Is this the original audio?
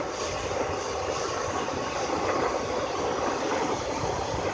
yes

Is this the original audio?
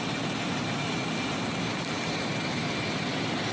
yes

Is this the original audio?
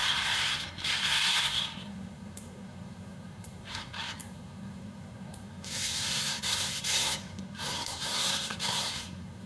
no